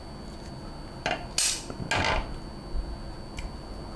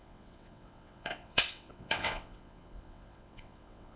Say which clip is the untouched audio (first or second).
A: first